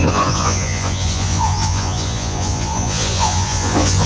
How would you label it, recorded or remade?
remade